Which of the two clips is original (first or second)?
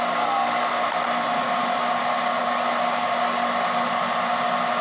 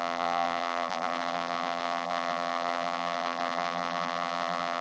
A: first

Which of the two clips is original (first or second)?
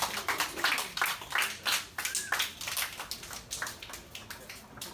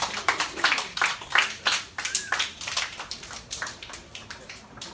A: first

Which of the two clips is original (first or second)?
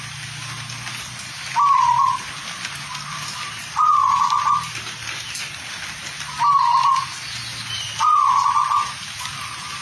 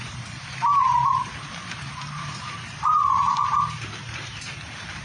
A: first